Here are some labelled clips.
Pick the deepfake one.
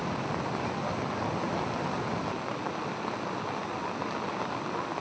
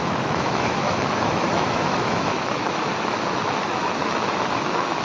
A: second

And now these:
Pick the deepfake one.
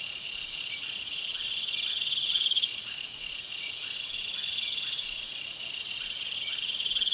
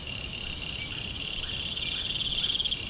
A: first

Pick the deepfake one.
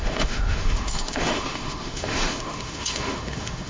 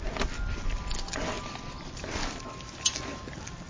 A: first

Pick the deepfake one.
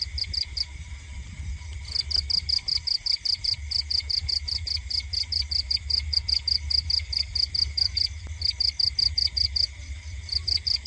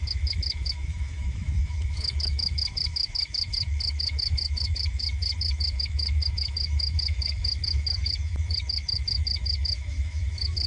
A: second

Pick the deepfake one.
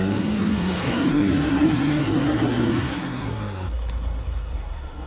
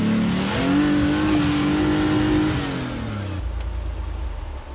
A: first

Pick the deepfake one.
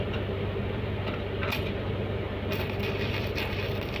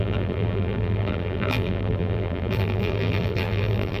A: second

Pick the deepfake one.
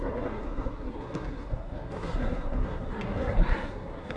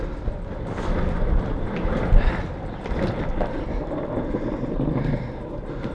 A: first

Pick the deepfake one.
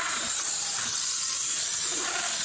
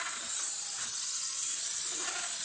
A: first